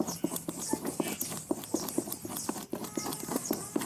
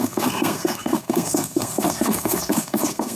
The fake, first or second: second